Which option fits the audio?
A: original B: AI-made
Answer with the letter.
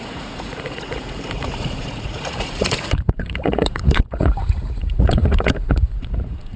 B